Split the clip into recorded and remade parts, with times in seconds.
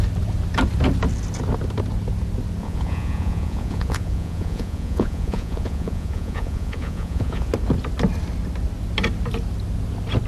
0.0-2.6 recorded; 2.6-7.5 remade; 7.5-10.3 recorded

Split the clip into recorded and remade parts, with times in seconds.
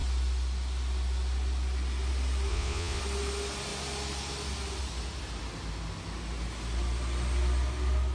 0.0-2.5 recorded; 2.5-3.0 remade; 3.0-8.1 recorded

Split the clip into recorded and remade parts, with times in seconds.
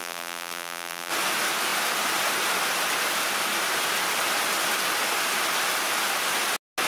0.0-1.1 remade; 1.1-6.9 recorded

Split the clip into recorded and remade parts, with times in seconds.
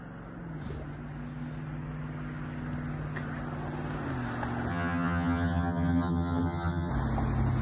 0.0-4.7 recorded; 4.7-6.9 remade; 6.9-7.6 recorded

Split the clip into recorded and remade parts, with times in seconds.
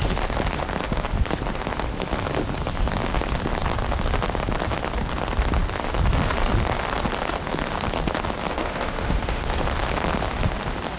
0.0-8.5 recorded; 8.5-9.6 remade; 9.6-11.0 recorded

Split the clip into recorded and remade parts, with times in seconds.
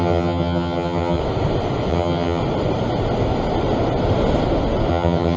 0.0-1.2 remade; 1.2-1.9 recorded; 1.9-2.4 remade; 2.4-4.9 recorded; 4.9-5.4 remade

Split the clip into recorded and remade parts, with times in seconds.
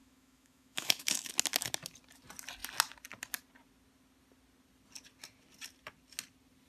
0.0-1.3 remade; 1.3-6.7 recorded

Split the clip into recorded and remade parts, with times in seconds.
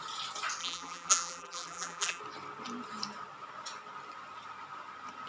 0.0-0.6 recorded; 0.6-2.2 remade; 2.2-5.3 recorded